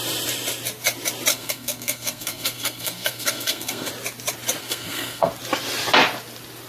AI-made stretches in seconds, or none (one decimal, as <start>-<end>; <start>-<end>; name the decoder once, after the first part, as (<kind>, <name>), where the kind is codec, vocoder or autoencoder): 1.3-3.9 (codec, SNAC); 4.6-5.3